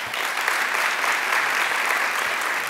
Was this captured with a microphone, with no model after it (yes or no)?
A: yes